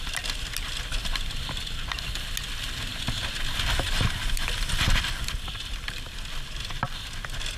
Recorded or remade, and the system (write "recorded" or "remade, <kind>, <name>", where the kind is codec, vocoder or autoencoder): recorded